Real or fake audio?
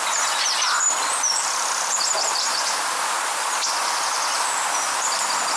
fake